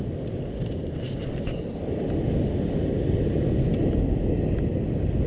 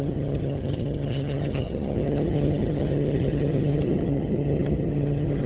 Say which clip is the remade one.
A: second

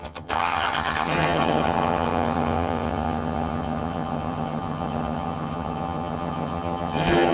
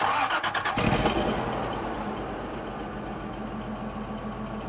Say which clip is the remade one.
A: first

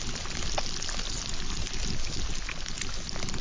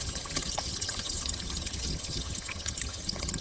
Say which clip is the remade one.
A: second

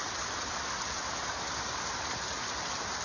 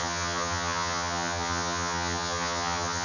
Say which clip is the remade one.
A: second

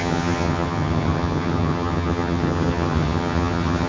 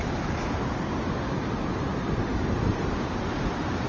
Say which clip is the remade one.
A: first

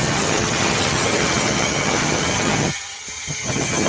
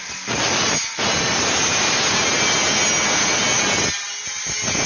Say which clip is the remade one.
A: first